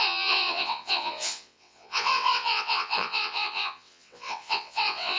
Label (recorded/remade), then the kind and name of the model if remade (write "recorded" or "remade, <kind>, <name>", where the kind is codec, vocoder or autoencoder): remade, vocoder, WaveNeXt